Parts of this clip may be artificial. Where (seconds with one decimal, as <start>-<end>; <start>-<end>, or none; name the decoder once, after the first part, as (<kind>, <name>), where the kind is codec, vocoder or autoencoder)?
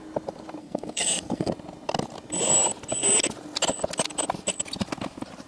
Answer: 0.6-1.5 (codec, SNAC)